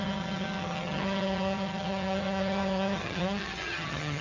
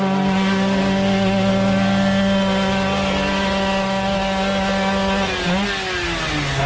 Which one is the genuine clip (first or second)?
second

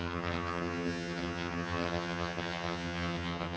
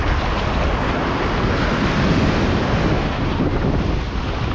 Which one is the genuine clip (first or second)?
second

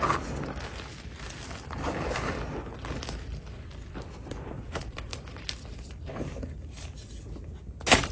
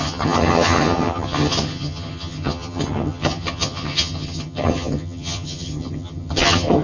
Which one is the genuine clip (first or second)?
first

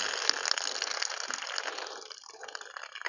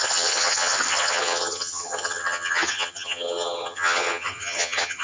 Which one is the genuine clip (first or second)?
first